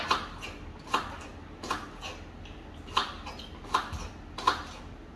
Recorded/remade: recorded